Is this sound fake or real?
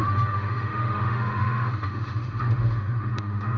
fake